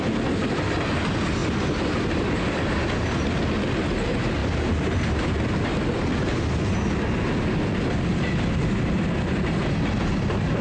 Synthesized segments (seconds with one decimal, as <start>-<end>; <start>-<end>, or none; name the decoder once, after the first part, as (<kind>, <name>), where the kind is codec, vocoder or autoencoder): 8.1-10.2 (vocoder, BigVGAN v2)